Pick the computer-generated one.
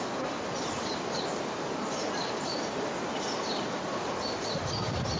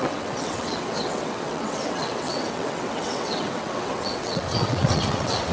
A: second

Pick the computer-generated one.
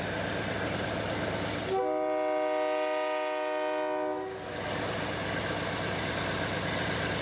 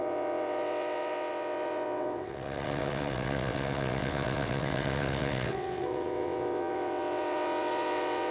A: second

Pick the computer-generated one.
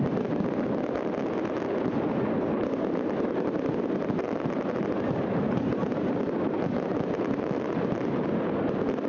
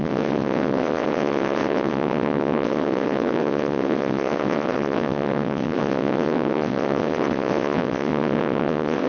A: second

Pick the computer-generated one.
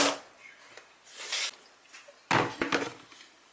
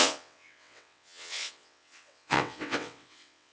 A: second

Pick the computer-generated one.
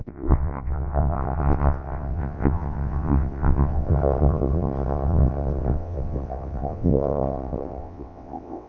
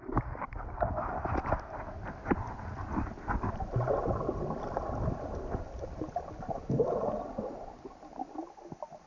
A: first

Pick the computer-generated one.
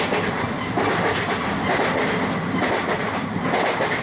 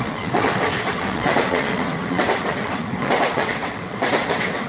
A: second